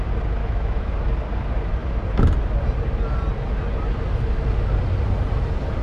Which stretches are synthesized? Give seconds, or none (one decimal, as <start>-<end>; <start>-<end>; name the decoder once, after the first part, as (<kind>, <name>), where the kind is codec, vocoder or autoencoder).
0.4-0.9 (autoencoder, DAC-VAE)